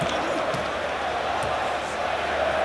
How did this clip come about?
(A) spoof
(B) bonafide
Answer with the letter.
B